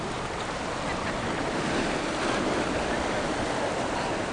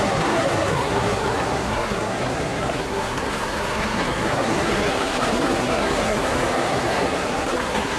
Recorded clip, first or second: first